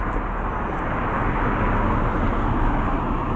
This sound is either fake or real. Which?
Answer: real